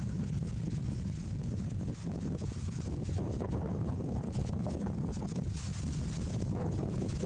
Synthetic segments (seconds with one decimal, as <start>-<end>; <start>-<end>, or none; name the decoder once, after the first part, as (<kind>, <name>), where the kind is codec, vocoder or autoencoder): 0.0-5.6 (codec, HILCodec); 6.3-7.3

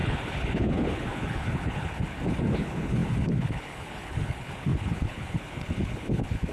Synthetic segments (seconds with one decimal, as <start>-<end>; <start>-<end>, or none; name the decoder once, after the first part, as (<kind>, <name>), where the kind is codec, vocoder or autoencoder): 0.0-6.5 (codec, HILCodec)

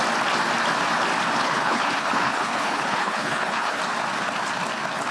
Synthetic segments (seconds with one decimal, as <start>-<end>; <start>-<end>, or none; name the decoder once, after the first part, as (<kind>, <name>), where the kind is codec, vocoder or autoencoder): 1.4-3.8 (codec, HILCodec)

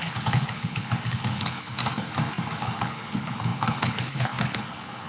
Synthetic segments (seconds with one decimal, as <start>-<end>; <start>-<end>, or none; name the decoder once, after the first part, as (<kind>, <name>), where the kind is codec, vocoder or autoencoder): 0.0-1.8 (codec, HILCodec); 2.6-5.1